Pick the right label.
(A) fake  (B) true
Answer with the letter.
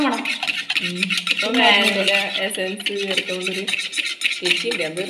B